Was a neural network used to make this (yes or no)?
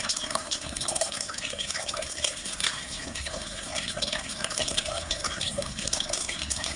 yes